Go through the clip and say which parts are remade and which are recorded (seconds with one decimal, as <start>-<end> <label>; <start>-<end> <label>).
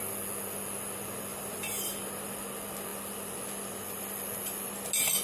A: 0.0-1.3 recorded; 1.3-2.1 remade; 2.1-5.2 recorded